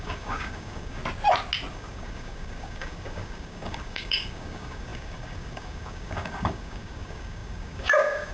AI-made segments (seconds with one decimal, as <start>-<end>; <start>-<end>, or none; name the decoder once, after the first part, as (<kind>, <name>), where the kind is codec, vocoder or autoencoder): 0.0-1.0 (codec, DAC); 1.7-8.3